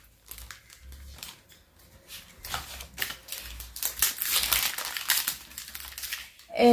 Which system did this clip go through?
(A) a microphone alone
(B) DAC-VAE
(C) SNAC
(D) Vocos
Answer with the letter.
A